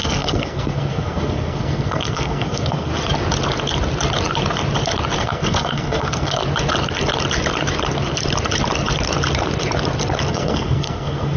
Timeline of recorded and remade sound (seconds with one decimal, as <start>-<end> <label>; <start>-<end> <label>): 0.0-2.9 remade; 2.9-5.2 recorded; 5.2-6.4 remade; 6.4-10.3 recorded; 10.3-11.4 remade